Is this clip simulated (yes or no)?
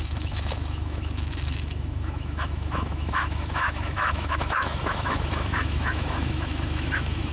yes